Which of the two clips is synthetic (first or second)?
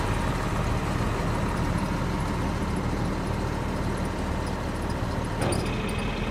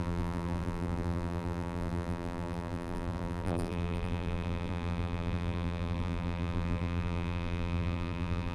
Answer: second